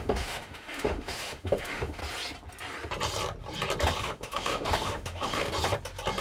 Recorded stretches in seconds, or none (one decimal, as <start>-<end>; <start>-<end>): 2.0-4.0; 5.5-6.2